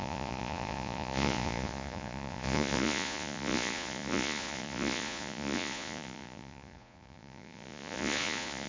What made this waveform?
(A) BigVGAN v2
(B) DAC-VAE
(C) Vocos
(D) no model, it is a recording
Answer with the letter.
C